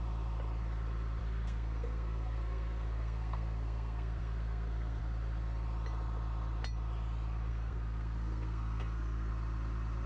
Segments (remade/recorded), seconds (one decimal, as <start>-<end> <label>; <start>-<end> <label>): 0.0-1.2 recorded; 1.2-5.0 remade; 5.0-7.5 recorded; 7.5-9.3 remade; 9.3-10.1 recorded